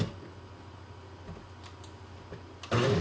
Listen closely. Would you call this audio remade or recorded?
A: recorded